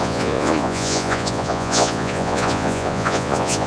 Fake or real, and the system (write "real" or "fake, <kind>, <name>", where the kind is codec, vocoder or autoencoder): fake, vocoder, Vocos